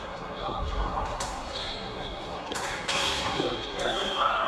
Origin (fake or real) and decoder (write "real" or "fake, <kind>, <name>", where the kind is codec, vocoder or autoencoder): fake, codec, SNAC